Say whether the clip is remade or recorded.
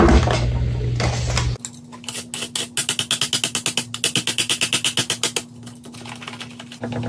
recorded